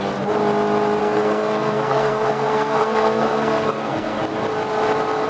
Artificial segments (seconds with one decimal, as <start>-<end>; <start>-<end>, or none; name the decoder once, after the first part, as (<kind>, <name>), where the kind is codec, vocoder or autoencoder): 1.0-4.2 (codec, SNAC)